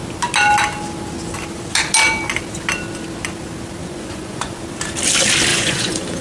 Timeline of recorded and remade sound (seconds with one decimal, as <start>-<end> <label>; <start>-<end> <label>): 0.0-3.8 recorded; 3.8-4.6 remade; 4.6-5.5 recorded; 5.5-6.2 remade